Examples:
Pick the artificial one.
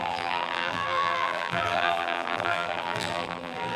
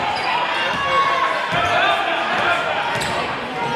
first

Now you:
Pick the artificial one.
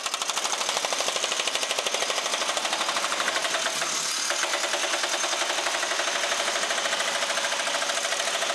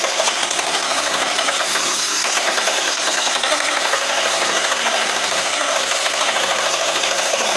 second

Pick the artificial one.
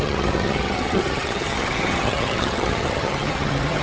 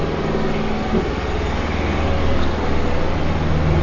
first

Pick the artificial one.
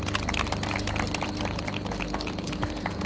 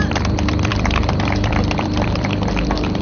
second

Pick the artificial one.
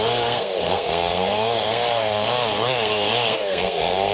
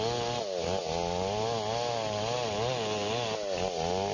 first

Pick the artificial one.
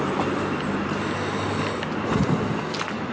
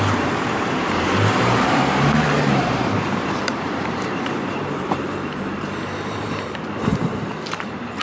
second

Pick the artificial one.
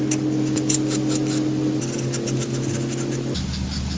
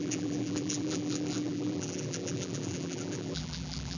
second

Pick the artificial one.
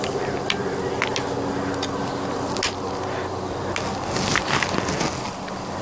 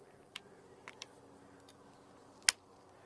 second